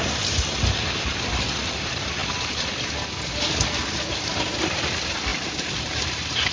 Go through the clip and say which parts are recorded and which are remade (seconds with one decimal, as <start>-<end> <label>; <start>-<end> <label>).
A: 0.0-6.5 recorded